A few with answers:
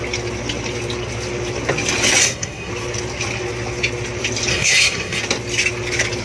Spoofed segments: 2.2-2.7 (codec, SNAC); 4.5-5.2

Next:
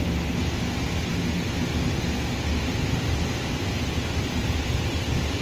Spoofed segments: none

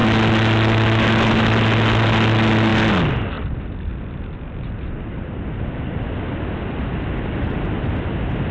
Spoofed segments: none

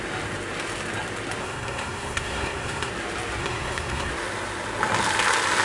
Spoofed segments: 1.4-2.9 (codec, SNAC); 3.4-4.1

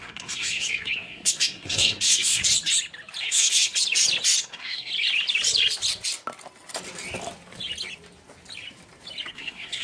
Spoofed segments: 0.0-2.4 (codec, SNAC); 3.2-3.7; 4.4-4.9; 9.3-9.8

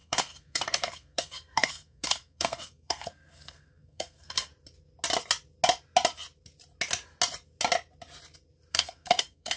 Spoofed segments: 0.0-4.5 (codec, SNAC); 8.7-9.6